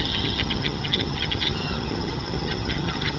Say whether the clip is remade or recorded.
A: remade